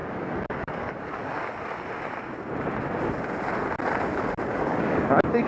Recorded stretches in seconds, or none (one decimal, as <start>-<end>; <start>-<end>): 1.2-4.5